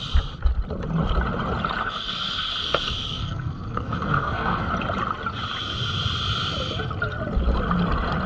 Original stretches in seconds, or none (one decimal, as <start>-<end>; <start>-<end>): 0.0-1.8; 4.7-8.3